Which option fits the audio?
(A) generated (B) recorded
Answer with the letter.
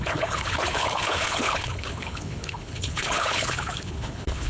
A